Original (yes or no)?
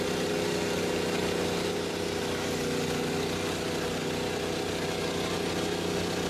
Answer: yes